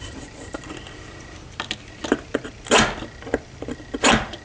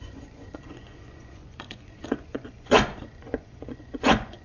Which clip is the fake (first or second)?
second